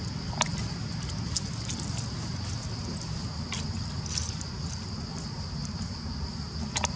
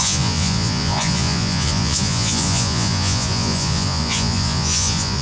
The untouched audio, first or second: first